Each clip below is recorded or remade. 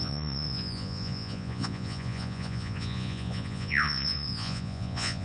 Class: remade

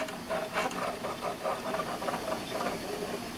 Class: recorded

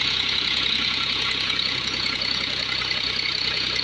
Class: remade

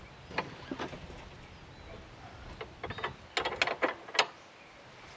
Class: recorded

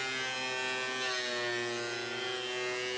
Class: recorded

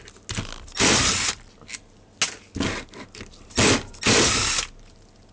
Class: recorded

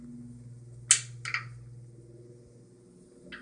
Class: recorded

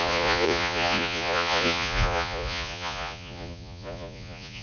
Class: remade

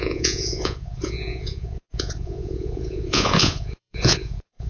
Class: remade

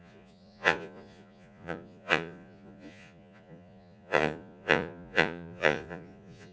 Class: remade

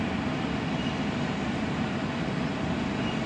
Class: recorded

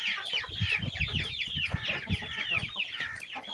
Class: remade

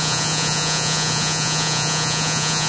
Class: remade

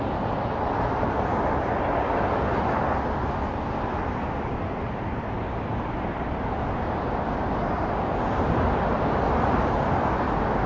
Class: recorded